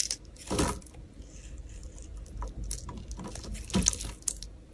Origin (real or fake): real